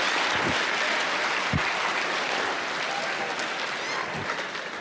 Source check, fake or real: real